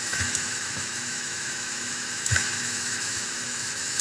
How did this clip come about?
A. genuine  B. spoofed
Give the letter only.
B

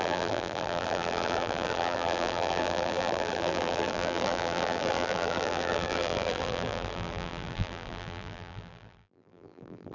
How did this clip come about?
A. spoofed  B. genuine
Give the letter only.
A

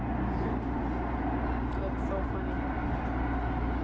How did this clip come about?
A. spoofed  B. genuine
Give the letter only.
B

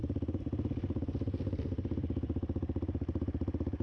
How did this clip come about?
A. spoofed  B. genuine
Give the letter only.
A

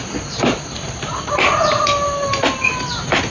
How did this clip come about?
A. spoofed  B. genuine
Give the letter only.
B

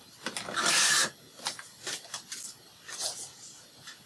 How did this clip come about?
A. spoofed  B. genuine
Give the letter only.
B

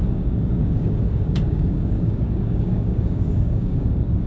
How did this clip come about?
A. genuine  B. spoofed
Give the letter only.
B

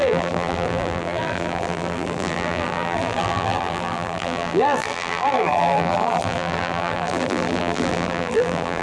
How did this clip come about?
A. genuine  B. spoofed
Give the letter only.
B